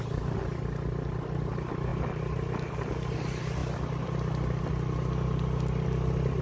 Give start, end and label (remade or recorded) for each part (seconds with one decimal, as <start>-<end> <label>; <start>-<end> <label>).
0.0-6.4 recorded